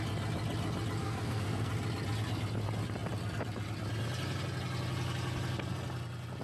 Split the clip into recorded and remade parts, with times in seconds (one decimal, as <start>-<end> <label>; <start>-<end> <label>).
0.0-1.0 recorded; 1.0-1.7 remade; 1.7-6.4 recorded